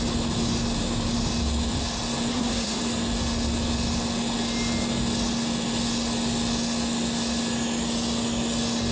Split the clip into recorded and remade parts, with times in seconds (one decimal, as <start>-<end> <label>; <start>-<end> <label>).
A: 0.0-2.3 recorded; 2.3-2.8 remade; 2.8-8.9 recorded